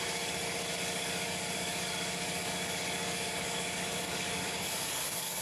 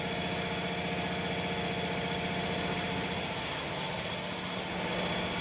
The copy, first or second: first